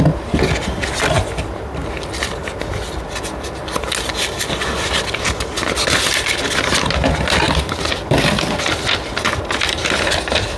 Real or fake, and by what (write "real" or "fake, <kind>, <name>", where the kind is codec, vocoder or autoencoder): real